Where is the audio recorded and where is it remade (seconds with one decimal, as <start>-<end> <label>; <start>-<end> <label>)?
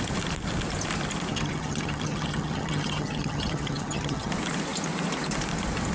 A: 0.0-1.3 recorded; 1.3-4.3 remade; 4.3-5.9 recorded